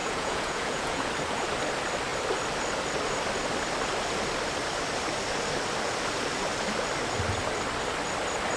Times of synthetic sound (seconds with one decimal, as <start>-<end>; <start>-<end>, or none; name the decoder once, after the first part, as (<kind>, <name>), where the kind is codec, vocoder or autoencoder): 0.0-1.1 (vocoder, Vocos)